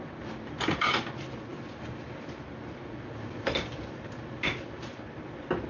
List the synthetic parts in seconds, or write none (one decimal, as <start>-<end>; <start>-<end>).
none